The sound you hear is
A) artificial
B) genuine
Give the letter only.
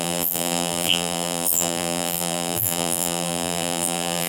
A